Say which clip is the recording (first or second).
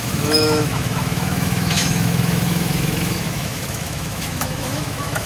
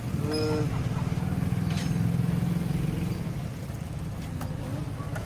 second